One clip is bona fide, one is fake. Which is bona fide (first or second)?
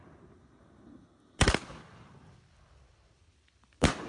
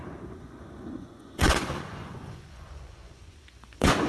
first